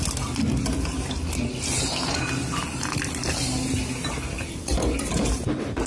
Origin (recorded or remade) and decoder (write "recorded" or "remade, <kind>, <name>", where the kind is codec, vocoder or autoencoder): recorded